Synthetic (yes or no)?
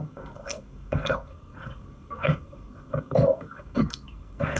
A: yes